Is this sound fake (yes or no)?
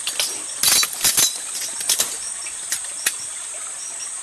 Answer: yes